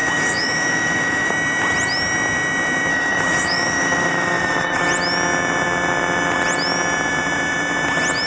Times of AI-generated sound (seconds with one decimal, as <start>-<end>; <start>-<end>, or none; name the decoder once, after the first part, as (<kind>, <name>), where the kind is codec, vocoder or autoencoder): 0.0-1.3 (autoencoder, DAC-VAE); 2.9-4.8